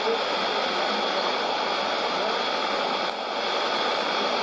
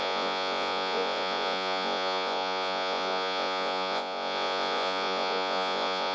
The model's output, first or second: second